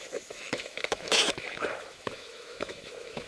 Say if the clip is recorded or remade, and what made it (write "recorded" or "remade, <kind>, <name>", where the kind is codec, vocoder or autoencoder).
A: remade, autoencoder, DAC-VAE